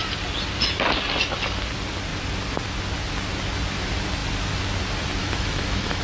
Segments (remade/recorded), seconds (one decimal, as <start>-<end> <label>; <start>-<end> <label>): 0.0-5.2 recorded; 5.2-6.0 remade